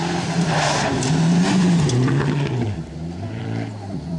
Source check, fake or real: fake